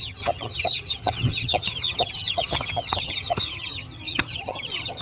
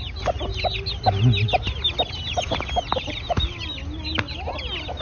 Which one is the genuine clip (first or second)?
second